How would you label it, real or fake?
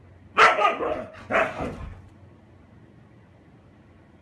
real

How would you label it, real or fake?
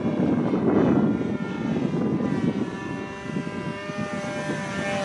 real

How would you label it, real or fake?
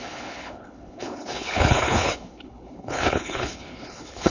fake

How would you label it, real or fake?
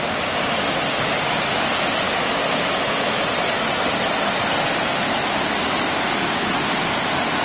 real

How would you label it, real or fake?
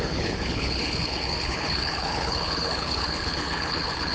fake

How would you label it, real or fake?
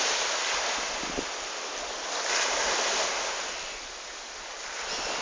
real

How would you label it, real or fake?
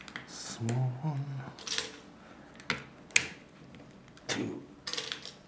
real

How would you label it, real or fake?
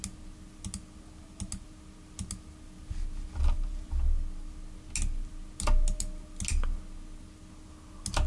real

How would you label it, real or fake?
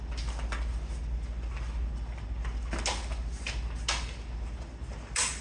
real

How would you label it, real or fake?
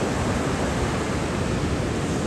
real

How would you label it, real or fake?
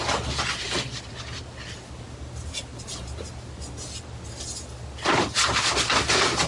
real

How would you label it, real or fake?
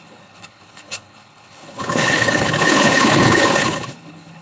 fake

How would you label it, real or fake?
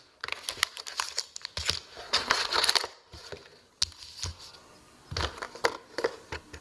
real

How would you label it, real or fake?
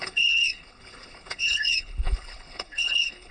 fake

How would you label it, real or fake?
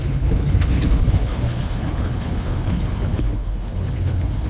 fake